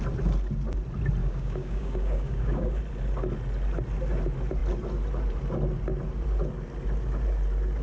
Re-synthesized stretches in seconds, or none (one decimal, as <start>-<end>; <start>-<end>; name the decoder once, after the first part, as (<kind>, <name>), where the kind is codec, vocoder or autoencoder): 1.2-2.8 (codec, DAC)